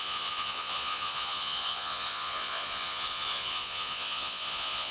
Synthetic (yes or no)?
yes